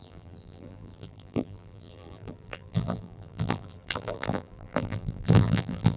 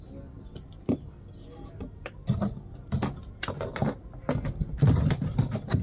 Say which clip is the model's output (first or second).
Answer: first